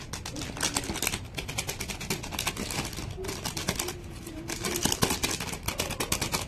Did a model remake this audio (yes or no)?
no